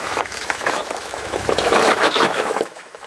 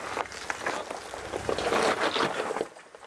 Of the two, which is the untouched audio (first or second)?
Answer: second